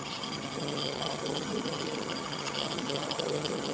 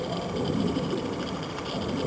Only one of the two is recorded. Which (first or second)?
second